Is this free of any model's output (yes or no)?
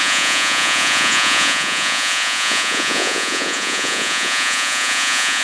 no